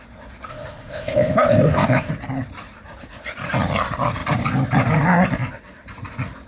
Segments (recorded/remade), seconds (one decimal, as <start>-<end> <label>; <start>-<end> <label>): 0.0-0.5 recorded; 0.5-2.1 remade; 2.1-6.5 recorded